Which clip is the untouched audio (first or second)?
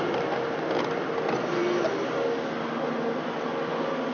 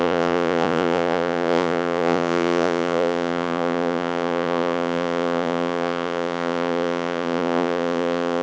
first